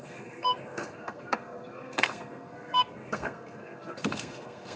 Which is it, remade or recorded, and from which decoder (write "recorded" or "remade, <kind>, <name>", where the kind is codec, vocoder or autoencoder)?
remade, codec, SNAC